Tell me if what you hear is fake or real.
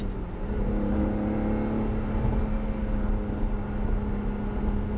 real